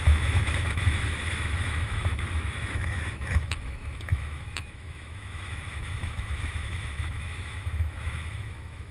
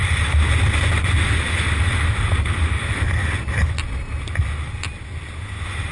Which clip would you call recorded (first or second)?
second